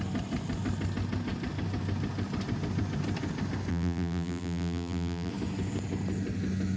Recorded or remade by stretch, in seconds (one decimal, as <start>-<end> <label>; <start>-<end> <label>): 0.0-3.7 recorded; 3.7-5.3 remade; 5.3-6.8 recorded